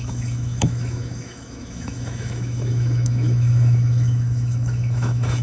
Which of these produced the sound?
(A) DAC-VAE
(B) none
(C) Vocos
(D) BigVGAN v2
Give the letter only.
A